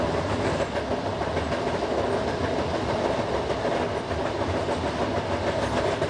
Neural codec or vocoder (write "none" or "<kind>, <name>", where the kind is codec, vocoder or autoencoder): none